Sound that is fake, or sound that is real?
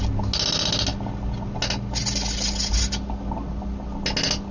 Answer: real